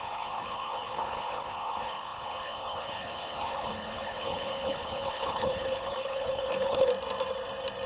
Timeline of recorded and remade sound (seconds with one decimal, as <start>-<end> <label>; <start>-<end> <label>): 0.0-6.9 remade; 6.9-7.9 recorded